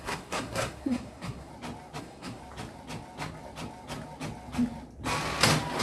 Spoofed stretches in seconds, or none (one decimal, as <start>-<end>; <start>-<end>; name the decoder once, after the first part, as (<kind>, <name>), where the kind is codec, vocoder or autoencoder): 0.0-1.5 (codec, SNAC); 2.0-2.4